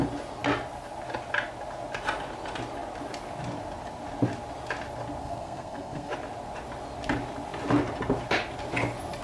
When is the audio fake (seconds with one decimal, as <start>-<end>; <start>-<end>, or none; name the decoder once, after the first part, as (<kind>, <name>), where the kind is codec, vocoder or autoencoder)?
5.2-6.1 (codec, SNAC)